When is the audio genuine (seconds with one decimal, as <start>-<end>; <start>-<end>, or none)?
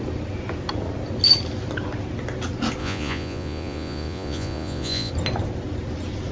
0.0-2.8; 5.1-6.3